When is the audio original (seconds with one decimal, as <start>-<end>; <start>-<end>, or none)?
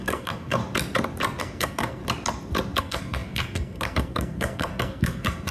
0.6-1.4; 2.0-2.8